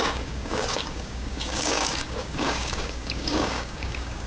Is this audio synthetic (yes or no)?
yes